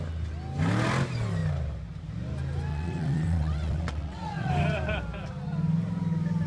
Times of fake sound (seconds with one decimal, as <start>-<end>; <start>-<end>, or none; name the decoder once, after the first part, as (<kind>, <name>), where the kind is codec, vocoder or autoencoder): 2.7-4.5 (vocoder, WaveNeXt)